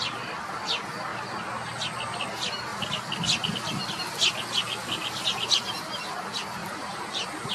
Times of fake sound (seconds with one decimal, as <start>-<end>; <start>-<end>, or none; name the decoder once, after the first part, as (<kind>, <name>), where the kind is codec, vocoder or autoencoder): 6.6-7.5 (vocoder, BigVGAN v2)